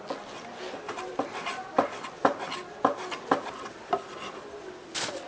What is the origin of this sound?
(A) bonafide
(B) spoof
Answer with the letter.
A